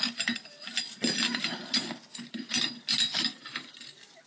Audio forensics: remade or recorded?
recorded